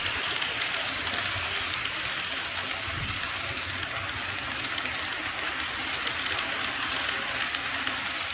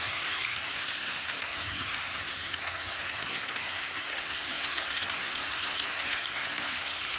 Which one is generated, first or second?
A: second